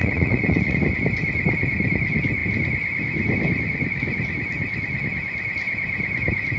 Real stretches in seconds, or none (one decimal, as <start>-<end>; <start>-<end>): 0.8-6.6